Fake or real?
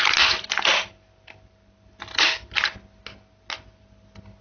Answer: real